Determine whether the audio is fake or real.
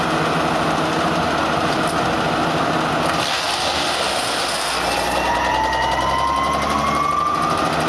real